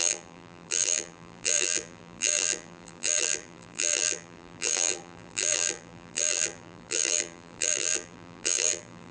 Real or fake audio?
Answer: fake